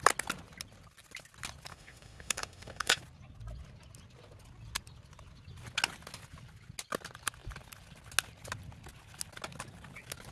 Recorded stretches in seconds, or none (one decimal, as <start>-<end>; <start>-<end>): 0.0-1.7; 3.0-10.3